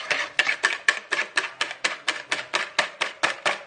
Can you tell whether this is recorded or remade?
recorded